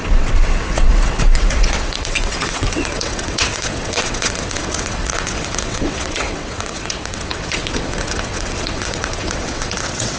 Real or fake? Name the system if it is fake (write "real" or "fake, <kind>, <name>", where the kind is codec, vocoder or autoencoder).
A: fake, vocoder, WaveNeXt